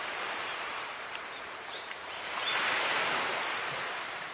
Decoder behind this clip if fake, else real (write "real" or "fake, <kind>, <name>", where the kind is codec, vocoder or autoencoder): fake, vocoder, BigVGAN v2